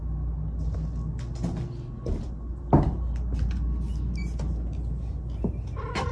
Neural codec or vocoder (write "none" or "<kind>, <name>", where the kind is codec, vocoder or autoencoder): none